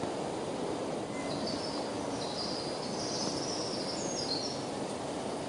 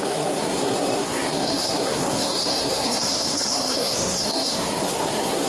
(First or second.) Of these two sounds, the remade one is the second